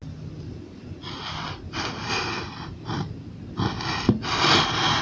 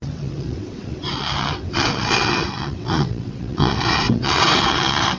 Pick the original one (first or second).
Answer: first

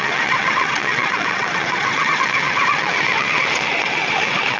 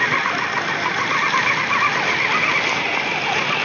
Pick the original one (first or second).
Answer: second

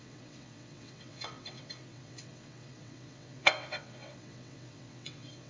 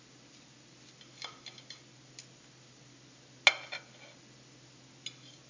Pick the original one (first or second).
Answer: second